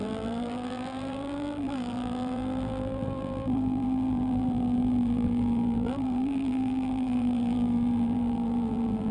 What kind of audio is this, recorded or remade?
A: remade